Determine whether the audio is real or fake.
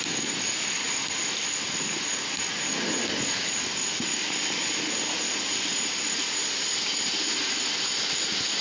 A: real